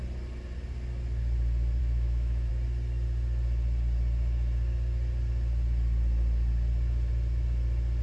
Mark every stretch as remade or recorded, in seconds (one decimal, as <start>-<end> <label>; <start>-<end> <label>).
0.0-1.8 recorded; 1.8-2.5 remade; 2.5-8.0 recorded